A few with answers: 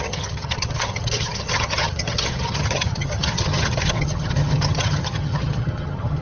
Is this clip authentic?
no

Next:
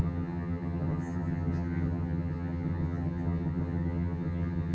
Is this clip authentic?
no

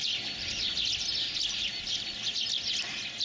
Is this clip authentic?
yes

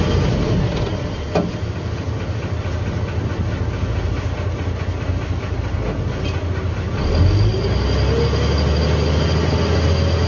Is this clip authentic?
yes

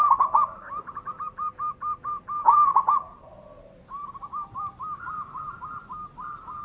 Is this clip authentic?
yes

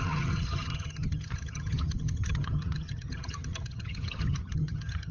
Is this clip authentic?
no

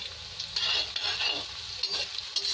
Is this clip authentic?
yes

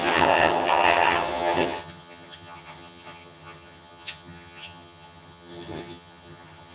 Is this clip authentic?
no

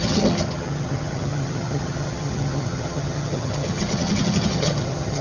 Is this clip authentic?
no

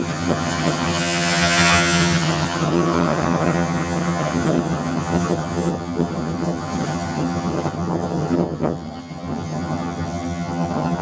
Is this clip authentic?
no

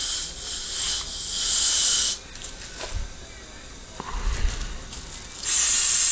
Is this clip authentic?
yes